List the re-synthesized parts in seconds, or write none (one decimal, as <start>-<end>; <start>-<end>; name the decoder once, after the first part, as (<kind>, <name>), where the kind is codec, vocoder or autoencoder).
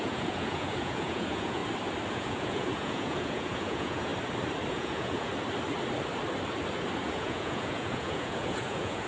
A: 0.0-1.6 (vocoder, Vocos); 2.1-4.1; 4.7-5.3; 7.0-9.1